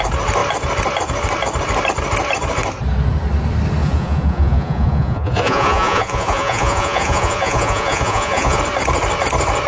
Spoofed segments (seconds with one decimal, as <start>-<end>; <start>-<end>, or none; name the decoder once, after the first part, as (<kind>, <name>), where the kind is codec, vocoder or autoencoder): 3.8-8.6 (vocoder, Vocos)